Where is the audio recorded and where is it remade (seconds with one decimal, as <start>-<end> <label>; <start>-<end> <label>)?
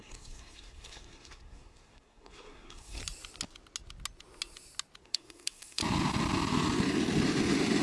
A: 0.0-3.0 remade; 3.0-5.0 recorded; 5.0-5.8 remade; 5.8-7.8 recorded